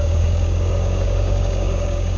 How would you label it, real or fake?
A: fake